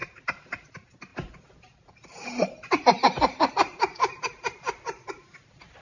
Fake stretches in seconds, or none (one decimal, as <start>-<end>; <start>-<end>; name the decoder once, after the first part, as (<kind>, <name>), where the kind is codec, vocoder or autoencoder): none